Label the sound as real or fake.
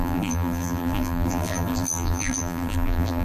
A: fake